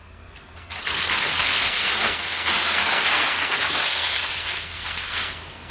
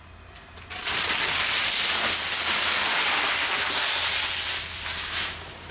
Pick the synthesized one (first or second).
first